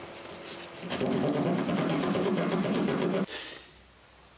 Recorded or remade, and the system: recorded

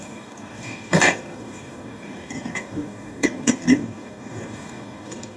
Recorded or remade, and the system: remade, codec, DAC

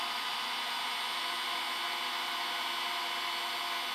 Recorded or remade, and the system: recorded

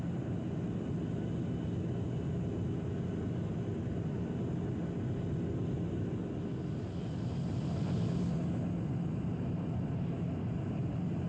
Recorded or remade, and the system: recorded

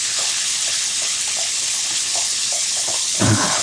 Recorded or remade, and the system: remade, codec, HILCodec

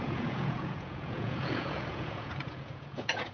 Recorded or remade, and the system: remade, vocoder, Vocos